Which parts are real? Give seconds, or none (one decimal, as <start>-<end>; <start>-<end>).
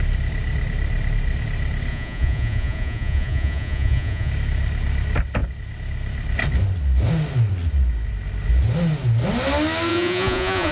0.0-1.9; 4.3-9.9